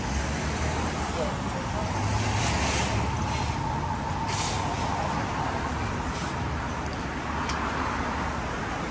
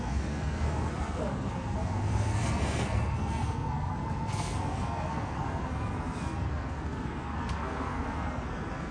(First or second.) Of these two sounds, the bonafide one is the first